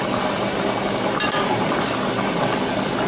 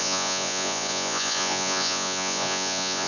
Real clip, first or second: first